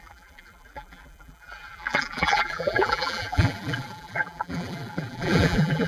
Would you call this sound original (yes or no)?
no